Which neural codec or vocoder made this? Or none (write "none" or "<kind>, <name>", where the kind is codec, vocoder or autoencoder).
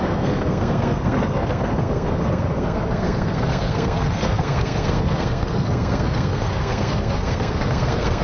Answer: codec, SNAC